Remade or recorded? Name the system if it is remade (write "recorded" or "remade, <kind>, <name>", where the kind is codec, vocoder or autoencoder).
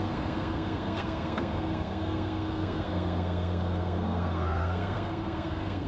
remade, codec, SNAC